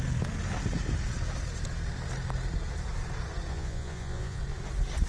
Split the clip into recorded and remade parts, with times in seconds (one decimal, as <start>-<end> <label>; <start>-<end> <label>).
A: 0.0-3.5 recorded; 3.5-4.4 remade; 4.4-5.1 recorded

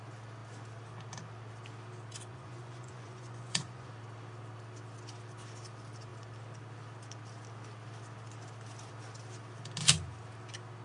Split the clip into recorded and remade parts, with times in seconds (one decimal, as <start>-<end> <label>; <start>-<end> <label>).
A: 0.0-2.3 recorded; 2.3-3.9 remade; 3.9-10.8 recorded

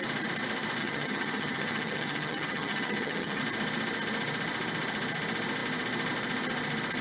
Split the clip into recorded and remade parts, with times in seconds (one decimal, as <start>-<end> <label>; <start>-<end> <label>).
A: 0.0-0.8 recorded; 0.8-3.4 remade; 3.4-7.0 recorded

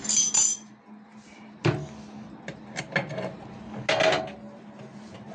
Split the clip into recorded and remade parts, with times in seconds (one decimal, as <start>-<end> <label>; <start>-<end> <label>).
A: 0.0-5.3 recorded

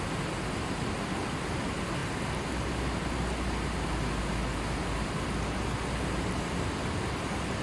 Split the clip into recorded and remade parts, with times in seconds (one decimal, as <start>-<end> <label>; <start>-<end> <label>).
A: 0.0-7.6 recorded

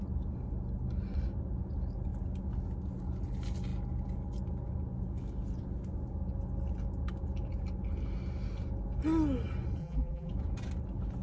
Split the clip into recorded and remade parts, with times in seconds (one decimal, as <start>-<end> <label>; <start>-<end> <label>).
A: 0.0-9.8 recorded; 9.8-10.3 remade; 10.3-11.2 recorded

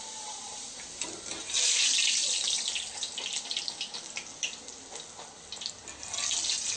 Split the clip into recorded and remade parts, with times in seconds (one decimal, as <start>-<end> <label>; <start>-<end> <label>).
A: 0.0-6.8 recorded